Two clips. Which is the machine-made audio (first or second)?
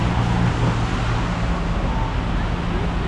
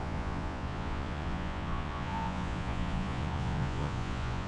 second